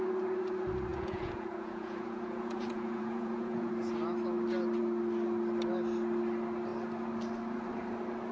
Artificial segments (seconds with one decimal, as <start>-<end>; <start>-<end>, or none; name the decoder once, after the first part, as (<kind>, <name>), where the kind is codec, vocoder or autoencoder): 0.9-3.7 (vocoder, Vocos)